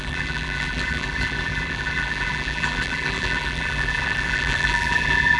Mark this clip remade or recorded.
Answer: remade